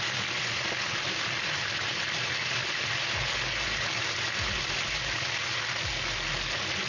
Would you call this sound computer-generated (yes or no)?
no